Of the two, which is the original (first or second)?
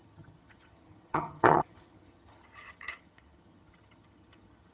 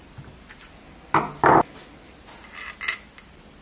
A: second